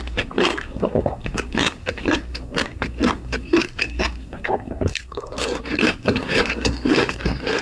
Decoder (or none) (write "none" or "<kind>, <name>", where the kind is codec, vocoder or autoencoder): codec, SNAC